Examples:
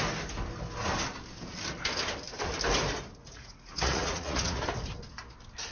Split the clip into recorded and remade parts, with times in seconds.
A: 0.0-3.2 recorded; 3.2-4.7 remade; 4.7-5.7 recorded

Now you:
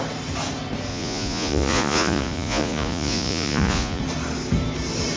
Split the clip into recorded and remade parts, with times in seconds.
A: 0.0-0.9 recorded; 0.9-4.0 remade; 4.0-5.2 recorded

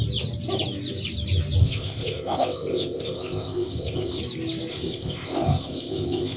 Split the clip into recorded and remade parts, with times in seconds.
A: 0.0-1.6 recorded; 1.6-4.2 remade; 4.2-4.7 recorded; 4.7-6.4 remade